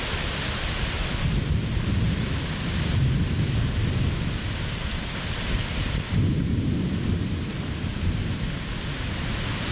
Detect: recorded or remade recorded